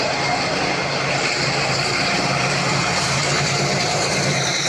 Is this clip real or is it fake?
fake